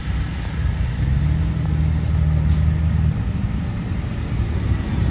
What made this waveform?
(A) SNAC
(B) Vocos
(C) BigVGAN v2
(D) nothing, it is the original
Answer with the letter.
D